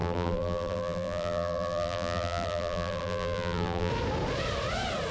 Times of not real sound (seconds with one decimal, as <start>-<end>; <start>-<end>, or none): 0.0-3.9